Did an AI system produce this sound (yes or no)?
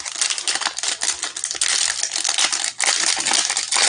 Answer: no